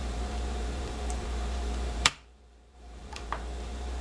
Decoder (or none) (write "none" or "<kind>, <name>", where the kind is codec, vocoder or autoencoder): vocoder, BigVGAN v2